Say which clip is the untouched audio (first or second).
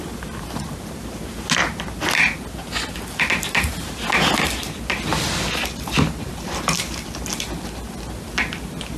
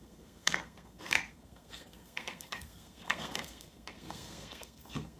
first